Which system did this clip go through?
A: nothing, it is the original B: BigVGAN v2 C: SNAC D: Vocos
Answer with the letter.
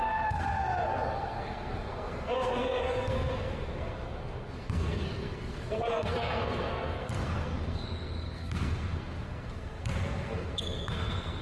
C